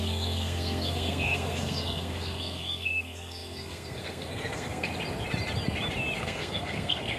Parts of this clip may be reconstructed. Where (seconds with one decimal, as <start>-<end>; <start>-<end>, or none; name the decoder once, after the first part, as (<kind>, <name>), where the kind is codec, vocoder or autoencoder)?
0.0-4.9 (codec, SNAC); 6.2-7.2